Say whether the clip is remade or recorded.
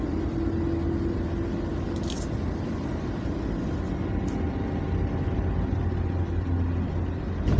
recorded